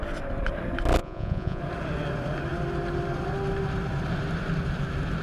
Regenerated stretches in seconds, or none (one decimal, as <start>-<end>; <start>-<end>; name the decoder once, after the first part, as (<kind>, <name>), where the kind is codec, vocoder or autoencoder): 1.0-1.6 (vocoder, Vocos)